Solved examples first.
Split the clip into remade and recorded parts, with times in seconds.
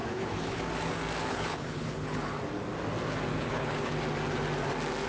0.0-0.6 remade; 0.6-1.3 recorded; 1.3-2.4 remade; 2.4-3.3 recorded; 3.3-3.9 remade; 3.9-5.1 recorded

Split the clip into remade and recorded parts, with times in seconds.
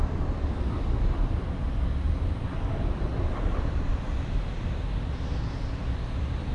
0.0-6.5 remade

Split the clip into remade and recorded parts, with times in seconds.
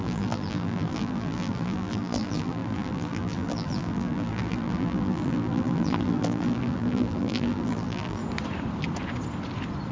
0.0-8.2 remade; 8.2-9.9 recorded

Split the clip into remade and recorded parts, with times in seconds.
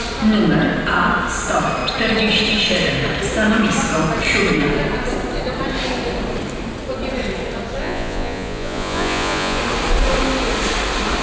0.0-7.8 recorded; 7.8-9.6 remade; 9.6-11.2 recorded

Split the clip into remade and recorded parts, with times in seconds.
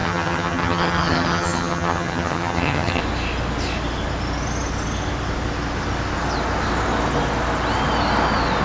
0.0-3.0 remade; 3.0-8.6 recorded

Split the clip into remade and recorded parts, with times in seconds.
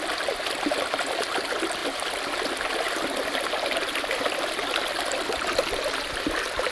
0.0-6.7 recorded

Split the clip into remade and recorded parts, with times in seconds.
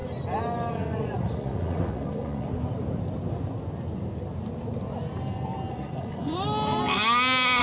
0.0-0.7 recorded; 0.7-2.5 remade; 2.5-5.7 recorded; 5.7-6.3 remade; 6.3-7.6 recorded